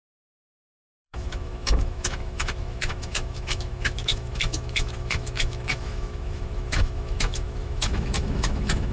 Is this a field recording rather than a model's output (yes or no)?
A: no